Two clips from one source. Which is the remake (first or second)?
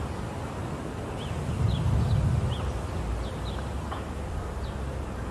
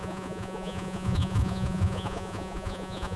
second